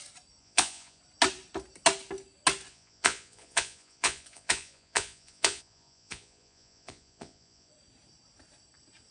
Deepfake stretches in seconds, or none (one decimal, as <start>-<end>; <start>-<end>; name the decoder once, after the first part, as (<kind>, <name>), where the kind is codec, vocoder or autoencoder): 0.4-1.0 (vocoder, Vocos); 2.7-7.7